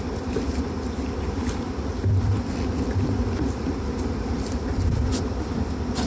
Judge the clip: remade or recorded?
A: recorded